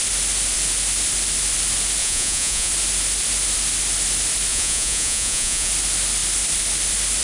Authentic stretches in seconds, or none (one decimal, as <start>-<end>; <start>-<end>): 0.0-2.0; 2.7-4.5; 5.7-7.2